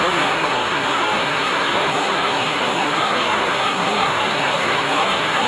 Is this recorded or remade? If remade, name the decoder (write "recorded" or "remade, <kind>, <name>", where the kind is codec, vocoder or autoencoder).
remade, codec, SNAC